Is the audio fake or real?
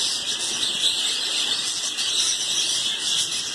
real